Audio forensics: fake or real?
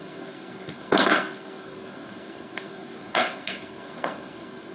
fake